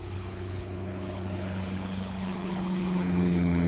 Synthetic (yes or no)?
yes